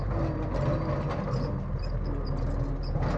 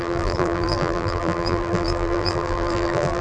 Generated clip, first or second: second